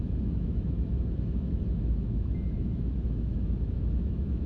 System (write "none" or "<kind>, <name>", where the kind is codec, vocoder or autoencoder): autoencoder, DAC-VAE